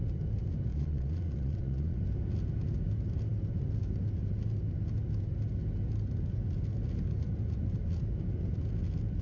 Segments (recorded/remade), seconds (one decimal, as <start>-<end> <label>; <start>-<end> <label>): 0.0-0.7 recorded; 0.7-2.0 remade; 2.0-9.2 recorded